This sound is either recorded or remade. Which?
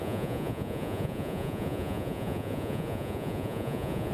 remade